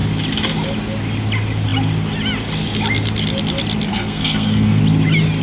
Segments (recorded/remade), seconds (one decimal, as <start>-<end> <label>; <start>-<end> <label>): 0.0-3.9 recorded; 3.9-4.8 remade; 4.8-5.4 recorded